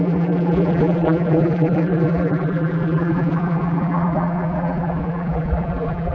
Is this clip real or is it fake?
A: fake